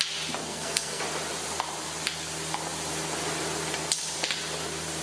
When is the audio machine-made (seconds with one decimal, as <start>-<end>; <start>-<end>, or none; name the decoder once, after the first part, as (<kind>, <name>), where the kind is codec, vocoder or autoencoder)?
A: 0.4-1.0 (codec, SNAC)